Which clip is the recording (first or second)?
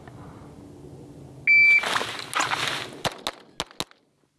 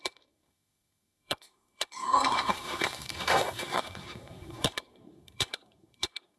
first